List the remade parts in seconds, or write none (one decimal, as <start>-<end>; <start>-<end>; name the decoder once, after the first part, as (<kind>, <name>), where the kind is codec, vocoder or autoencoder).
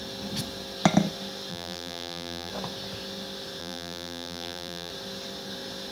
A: 1.5-2.5 (vocoder, BigVGAN v2); 3.6-4.9